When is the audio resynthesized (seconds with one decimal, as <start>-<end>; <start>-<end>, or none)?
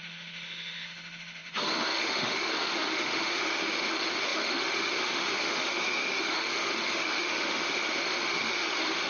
0.0-9.1